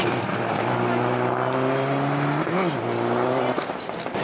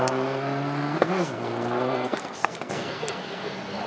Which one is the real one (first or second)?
first